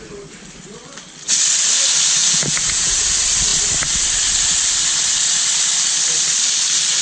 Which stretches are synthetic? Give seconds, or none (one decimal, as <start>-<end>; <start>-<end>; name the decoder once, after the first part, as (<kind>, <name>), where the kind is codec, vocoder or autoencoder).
2.2-3.0 (vocoder, Vocos)